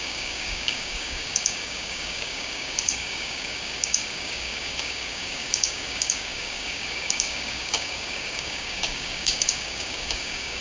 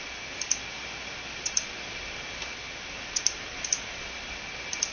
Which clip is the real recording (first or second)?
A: second